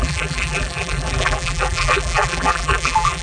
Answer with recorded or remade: remade